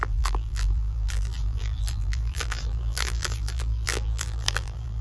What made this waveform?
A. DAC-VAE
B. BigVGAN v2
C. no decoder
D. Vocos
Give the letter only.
B